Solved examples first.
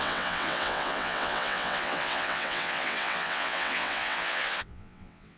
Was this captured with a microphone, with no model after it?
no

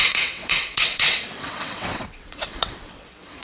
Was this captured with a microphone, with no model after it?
no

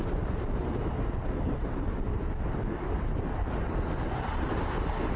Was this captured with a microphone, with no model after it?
yes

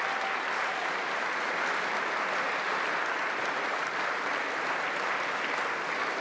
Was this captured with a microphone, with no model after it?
yes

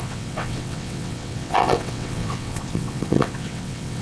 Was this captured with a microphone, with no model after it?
no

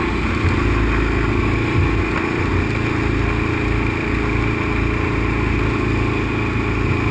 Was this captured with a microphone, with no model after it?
yes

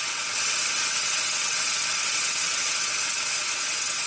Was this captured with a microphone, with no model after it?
no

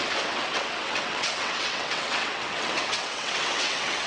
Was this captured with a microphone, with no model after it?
no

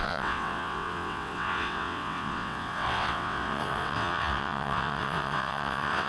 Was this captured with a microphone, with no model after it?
no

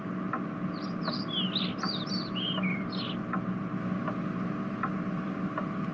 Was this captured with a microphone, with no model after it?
yes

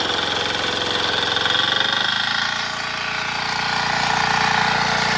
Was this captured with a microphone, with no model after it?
yes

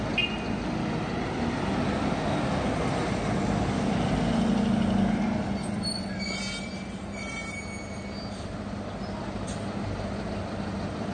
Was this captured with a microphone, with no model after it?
yes